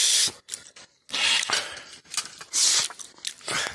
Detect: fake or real real